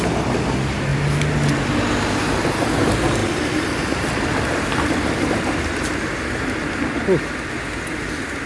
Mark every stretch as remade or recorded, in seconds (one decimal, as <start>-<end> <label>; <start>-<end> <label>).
0.0-3.2 recorded; 3.2-7.5 remade; 7.5-8.5 recorded